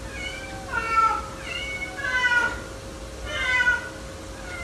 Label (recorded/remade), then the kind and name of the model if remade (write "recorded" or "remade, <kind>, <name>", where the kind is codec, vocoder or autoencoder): recorded